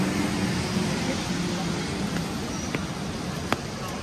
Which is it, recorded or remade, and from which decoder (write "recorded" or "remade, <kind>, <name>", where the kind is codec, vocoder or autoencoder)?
remade, vocoder, BigVGAN v2